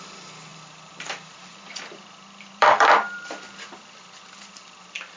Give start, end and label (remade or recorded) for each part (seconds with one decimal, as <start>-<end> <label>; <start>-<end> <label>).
0.0-0.5 recorded; 0.5-3.6 remade; 3.6-5.2 recorded

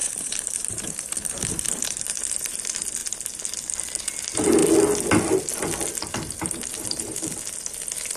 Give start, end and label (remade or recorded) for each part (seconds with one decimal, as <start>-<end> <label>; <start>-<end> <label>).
0.0-2.2 remade; 2.2-8.2 recorded

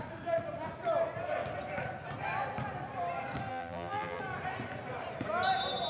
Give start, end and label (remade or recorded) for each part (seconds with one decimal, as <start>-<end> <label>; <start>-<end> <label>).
0.0-3.5 recorded; 3.5-4.2 remade; 4.2-5.9 recorded

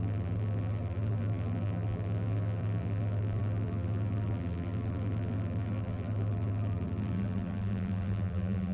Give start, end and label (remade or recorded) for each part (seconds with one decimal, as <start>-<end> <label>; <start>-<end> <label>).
0.0-8.7 remade

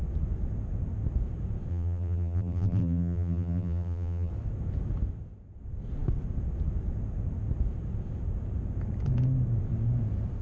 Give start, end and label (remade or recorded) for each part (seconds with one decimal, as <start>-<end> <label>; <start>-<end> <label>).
0.0-1.7 recorded; 1.7-4.3 remade; 4.3-10.4 recorded

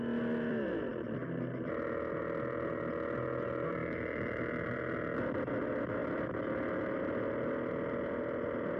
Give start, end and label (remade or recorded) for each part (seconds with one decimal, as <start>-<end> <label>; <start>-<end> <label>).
0.0-3.8 recorded; 3.8-4.4 remade; 4.4-8.8 recorded

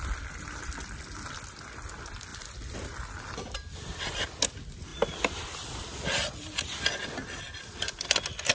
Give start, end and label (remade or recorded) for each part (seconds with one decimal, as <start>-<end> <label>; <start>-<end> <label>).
0.0-2.3 recorded; 2.3-3.3 remade; 3.3-7.0 recorded; 7.0-7.8 remade; 7.8-8.5 recorded

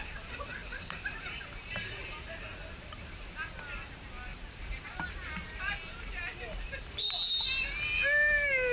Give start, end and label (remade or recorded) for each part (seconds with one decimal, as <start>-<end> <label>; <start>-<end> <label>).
0.0-0.6 recorded; 0.6-2.1 remade; 2.1-4.3 recorded; 4.3-5.6 remade; 5.6-8.7 recorded